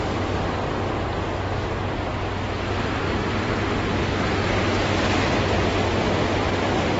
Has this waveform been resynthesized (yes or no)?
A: no